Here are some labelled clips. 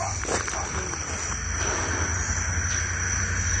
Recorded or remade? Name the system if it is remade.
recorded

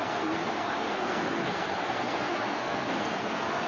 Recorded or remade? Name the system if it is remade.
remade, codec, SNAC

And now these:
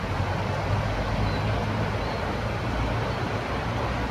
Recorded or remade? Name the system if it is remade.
recorded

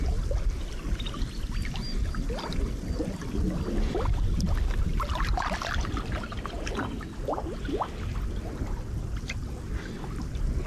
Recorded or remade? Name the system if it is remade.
recorded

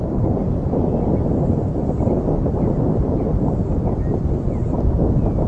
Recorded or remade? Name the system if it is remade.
recorded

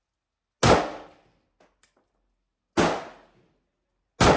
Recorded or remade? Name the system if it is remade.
recorded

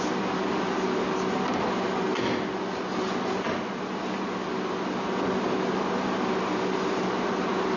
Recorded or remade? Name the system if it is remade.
recorded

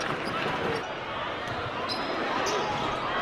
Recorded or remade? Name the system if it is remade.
recorded